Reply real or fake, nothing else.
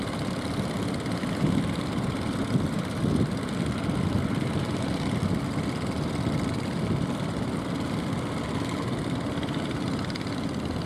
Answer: real